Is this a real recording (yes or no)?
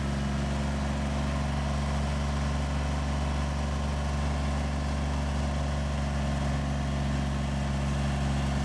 yes